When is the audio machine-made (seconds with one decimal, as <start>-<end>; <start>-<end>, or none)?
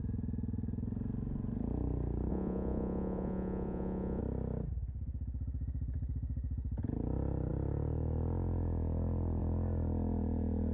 2.3-4.2